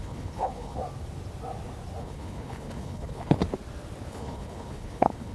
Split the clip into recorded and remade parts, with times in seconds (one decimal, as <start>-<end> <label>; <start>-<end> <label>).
0.0-0.8 remade; 0.8-2.0 recorded; 2.0-3.4 remade; 3.4-4.1 recorded; 4.1-5.3 remade